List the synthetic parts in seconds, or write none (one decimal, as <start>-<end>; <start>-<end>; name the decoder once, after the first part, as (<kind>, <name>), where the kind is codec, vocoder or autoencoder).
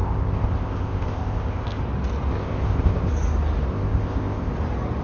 0.0-1.8 (codec, ZipCodec); 2.3-3.1; 3.7-4.5